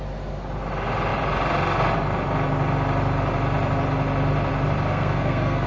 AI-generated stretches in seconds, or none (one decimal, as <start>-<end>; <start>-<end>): 4.9-5.7